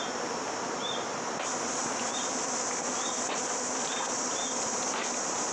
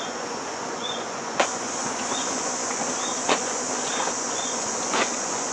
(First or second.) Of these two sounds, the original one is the first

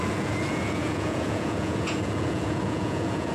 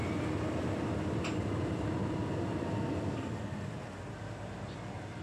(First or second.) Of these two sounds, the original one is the second